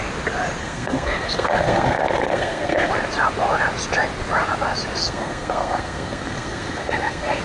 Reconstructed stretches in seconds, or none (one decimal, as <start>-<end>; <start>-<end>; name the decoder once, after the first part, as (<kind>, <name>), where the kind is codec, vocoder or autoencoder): 0.6-2.9 (codec, SNAC); 5.0-7.4